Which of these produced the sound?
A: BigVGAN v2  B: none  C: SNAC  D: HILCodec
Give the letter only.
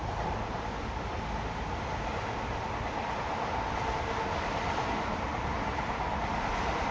B